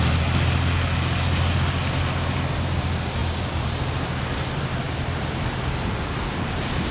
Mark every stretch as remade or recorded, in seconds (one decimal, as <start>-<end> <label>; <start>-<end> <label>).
0.0-6.9 recorded